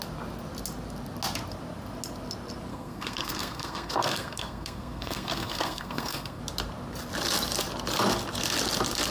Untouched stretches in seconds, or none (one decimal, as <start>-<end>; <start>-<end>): 0.0-2.7; 6.4-9.1